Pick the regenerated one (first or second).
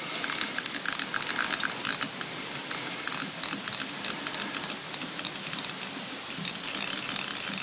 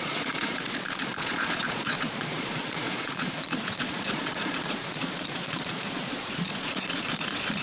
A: second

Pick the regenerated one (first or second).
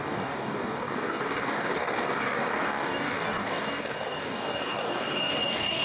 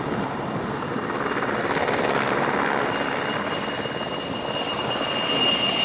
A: first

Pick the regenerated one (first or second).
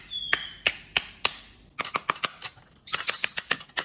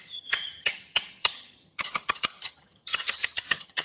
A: second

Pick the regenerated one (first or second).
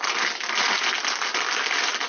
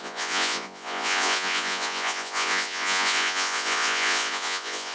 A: second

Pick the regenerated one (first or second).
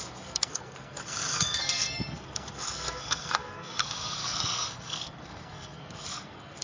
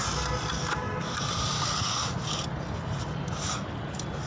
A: first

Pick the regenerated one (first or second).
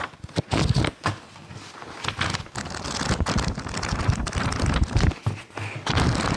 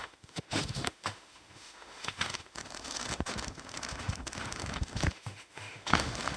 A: second